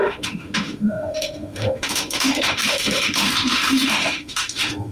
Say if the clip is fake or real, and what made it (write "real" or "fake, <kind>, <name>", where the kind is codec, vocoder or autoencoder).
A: fake, autoencoder, DAC-VAE